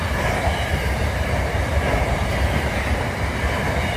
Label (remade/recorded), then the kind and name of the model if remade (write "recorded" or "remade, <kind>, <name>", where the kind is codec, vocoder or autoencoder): recorded